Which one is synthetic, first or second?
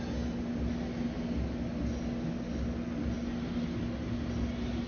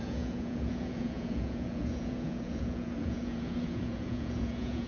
second